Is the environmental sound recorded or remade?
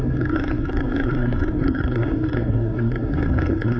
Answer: remade